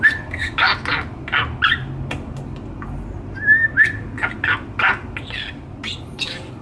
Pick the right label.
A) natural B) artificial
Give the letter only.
A